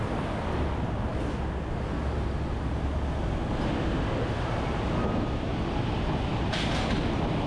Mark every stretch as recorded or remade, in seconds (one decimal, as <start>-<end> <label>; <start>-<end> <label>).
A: 0.0-7.5 recorded